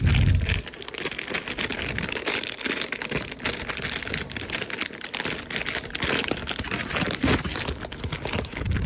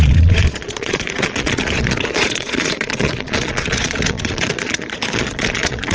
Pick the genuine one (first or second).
first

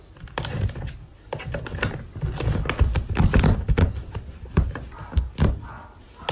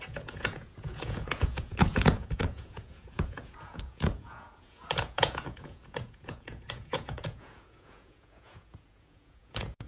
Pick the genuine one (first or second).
first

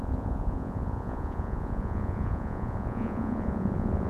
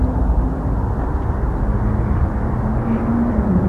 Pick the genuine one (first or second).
second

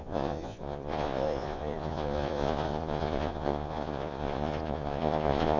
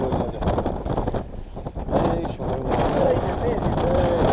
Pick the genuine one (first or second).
second